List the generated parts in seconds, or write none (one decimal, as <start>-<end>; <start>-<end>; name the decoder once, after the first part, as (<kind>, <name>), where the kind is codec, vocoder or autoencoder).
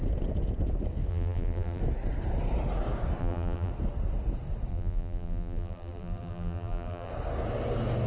1.1-1.8 (vocoder, BigVGAN v2); 3.2-3.7; 4.7-7.1